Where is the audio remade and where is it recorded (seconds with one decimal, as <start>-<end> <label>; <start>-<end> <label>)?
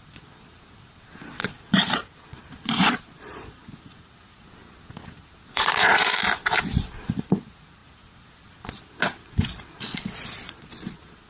0.0-6.1 remade; 6.1-7.1 recorded; 7.1-11.3 remade